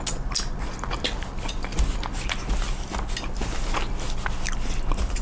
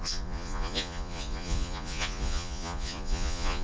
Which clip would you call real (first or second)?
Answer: first